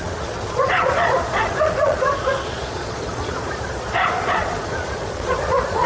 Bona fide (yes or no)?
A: no